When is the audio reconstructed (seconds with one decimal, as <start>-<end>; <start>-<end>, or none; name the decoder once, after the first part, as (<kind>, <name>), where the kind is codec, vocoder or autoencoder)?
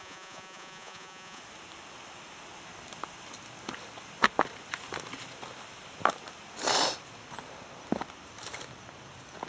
0.0-1.4 (vocoder, Vocos)